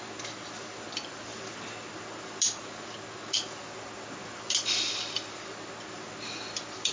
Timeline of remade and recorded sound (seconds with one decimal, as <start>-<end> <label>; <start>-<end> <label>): 0.0-6.9 recorded